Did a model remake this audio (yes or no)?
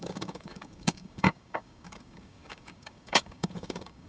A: yes